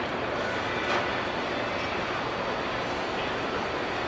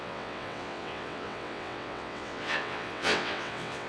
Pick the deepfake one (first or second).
second